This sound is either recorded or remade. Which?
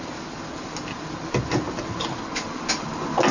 recorded